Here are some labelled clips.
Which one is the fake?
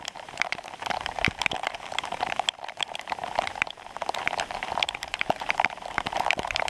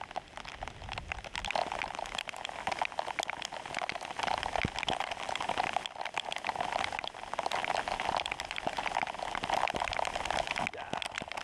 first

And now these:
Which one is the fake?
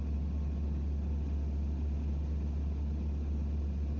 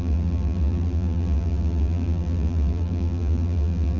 second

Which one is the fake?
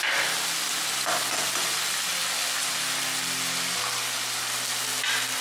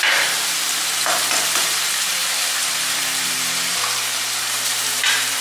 second